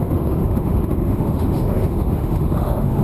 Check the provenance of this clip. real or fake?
fake